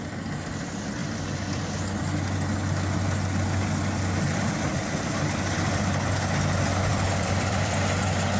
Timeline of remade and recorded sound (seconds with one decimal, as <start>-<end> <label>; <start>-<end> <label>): 0.0-6.9 recorded; 6.9-8.0 remade; 8.0-8.4 recorded